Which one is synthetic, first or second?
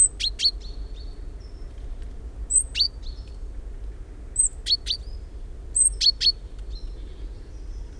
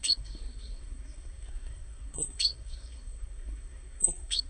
second